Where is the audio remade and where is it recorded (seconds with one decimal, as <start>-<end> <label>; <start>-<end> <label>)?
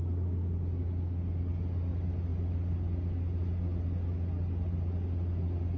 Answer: 0.0-5.8 recorded